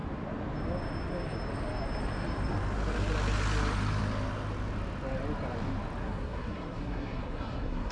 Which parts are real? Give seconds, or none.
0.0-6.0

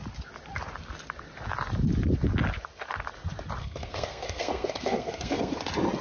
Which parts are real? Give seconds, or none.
0.0-3.6; 5.6-6.0

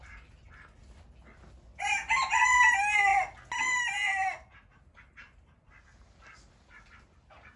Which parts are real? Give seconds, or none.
0.0-7.6

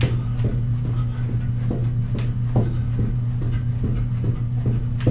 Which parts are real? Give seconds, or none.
0.0-5.1

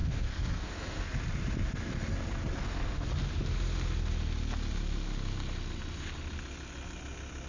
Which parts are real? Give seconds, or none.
1.1-2.6; 3.1-7.5

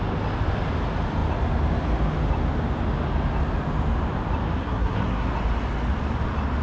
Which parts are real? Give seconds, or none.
0.0-4.6; 5.3-6.6

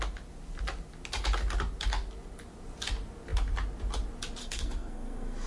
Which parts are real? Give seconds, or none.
0.0-4.4

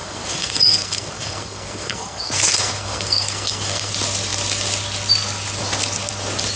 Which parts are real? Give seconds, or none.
3.9-6.6